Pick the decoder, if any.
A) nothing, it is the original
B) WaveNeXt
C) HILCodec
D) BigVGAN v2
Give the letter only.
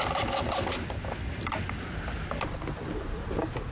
A